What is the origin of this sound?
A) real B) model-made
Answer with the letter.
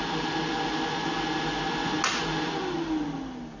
A